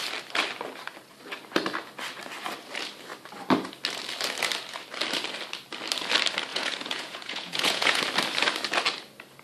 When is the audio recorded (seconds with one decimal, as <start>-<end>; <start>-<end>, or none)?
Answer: 0.0-6.5; 8.0-9.4